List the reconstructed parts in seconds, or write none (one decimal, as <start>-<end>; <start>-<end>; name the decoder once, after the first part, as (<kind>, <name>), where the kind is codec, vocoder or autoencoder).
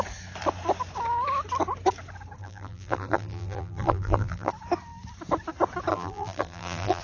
2.4-4.5 (vocoder, BigVGAN v2); 5.9-7.0